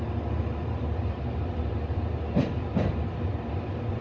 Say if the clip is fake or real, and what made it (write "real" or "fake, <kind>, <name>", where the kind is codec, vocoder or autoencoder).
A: fake, vocoder, BigVGAN v2